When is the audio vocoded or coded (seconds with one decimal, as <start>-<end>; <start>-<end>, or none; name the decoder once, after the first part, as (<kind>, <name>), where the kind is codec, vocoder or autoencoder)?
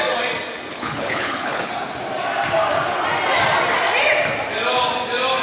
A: 0.7-1.7 (codec, HILCodec)